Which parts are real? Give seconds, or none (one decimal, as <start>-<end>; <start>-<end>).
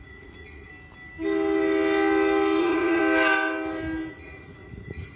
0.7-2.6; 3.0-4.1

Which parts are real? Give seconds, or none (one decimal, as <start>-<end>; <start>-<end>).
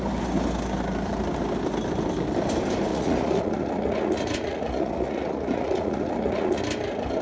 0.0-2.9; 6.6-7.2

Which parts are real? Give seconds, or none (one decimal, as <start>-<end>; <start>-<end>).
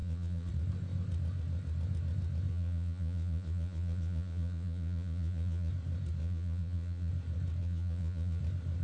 0.5-2.5; 5.7-6.2; 7.1-7.6; 8.4-8.8